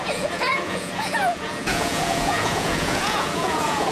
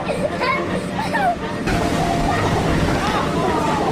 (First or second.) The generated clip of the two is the first